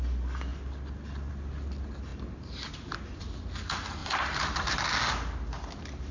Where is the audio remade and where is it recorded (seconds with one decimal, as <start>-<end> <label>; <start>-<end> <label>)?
0.0-2.1 recorded; 2.1-3.2 remade; 3.2-4.0 recorded; 4.0-4.8 remade; 4.8-6.1 recorded